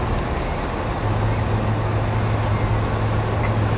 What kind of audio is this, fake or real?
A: real